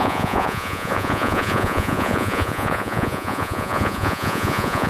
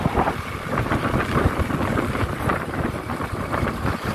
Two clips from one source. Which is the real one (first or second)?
second